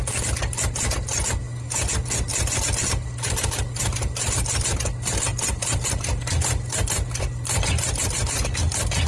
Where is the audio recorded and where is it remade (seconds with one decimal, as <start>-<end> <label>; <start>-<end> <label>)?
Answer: 0.0-9.1 recorded